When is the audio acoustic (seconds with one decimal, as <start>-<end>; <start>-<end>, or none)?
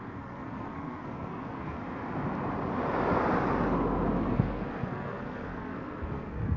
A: 1.8-4.3